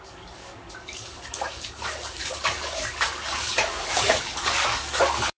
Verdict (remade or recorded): remade